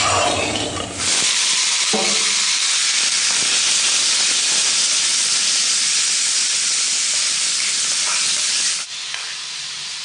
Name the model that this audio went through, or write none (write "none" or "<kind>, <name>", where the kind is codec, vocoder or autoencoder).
none